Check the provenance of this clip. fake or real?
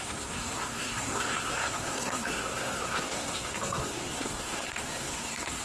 fake